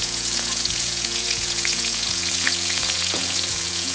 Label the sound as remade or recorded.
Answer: remade